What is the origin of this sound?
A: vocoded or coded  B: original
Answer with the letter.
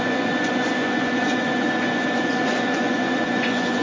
A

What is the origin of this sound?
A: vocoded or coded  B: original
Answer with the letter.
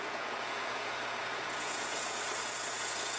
A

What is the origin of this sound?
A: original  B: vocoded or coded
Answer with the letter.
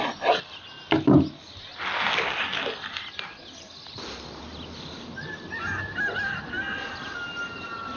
A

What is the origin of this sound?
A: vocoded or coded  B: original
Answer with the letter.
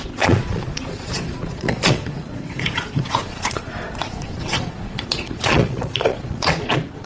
A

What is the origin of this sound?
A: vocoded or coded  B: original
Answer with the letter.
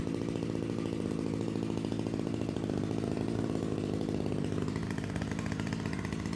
B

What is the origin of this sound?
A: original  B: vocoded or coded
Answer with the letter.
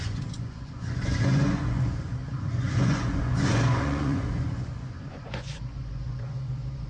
B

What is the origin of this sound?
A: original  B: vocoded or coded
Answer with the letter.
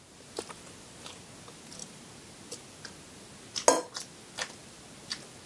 A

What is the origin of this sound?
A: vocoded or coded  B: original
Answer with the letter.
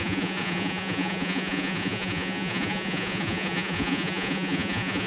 A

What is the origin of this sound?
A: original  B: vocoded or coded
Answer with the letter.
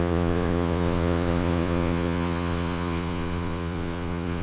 B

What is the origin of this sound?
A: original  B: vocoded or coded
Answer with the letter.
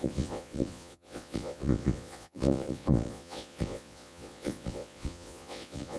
B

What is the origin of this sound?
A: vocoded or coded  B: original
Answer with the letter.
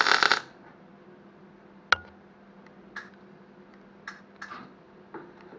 B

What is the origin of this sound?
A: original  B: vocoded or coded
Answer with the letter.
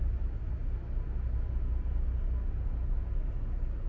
A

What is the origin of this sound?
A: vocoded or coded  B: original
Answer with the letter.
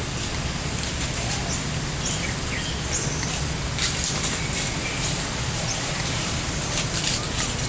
B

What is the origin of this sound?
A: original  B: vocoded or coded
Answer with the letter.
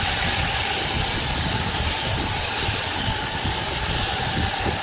A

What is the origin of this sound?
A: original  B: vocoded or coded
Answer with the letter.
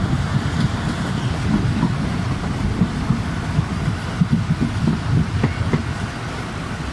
A